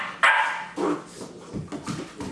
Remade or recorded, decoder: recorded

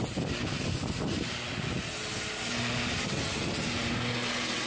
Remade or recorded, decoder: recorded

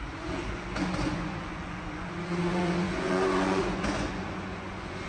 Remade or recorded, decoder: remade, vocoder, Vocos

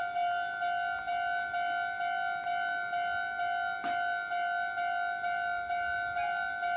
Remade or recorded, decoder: recorded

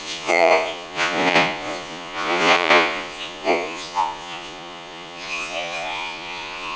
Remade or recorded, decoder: remade, vocoder, Vocos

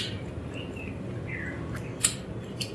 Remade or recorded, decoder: recorded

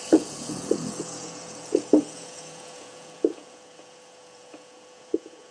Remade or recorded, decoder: remade, vocoder, Vocos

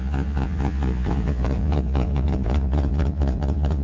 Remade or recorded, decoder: remade, vocoder, Vocos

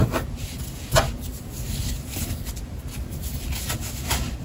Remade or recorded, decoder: recorded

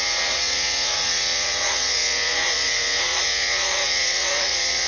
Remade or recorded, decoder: remade, vocoder, Vocos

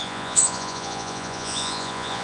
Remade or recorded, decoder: remade, vocoder, Vocos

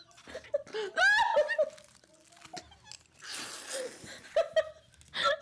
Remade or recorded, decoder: recorded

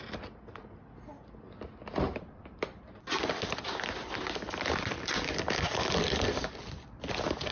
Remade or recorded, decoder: recorded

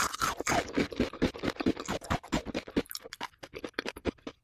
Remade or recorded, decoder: recorded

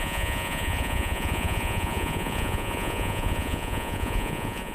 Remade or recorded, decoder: remade, vocoder, Vocos